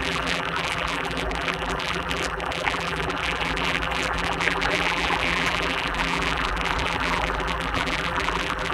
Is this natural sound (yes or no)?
no